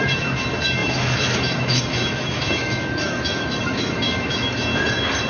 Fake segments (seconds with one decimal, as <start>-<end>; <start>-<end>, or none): 0.0-4.7